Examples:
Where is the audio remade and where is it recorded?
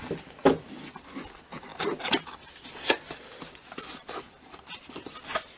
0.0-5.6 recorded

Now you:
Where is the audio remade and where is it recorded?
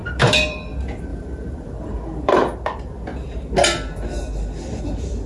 0.0-0.7 remade; 0.7-1.1 recorded; 1.1-2.3 remade; 2.3-5.3 recorded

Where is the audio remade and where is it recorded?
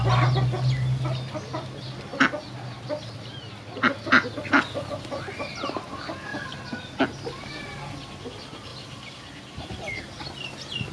0.0-10.9 recorded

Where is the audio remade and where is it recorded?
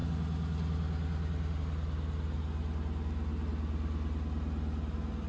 0.0-5.3 recorded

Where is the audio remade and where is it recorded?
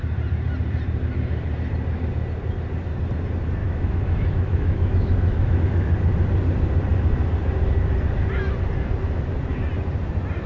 0.0-3.6 recorded; 3.6-5.6 remade; 5.6-10.5 recorded